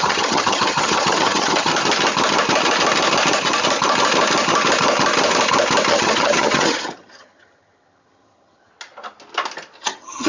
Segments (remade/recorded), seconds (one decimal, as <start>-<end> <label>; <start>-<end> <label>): 0.0-1.7 remade; 1.7-5.9 recorded; 5.9-8.7 remade; 8.7-9.8 recorded; 9.8-10.3 remade